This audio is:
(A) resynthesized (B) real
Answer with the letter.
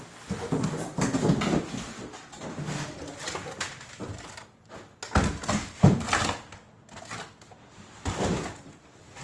B